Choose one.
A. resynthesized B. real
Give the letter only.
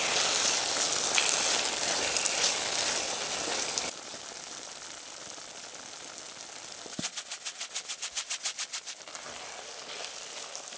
B